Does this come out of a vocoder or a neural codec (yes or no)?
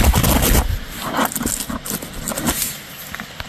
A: no